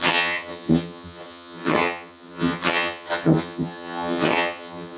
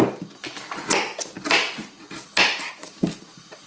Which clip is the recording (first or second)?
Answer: second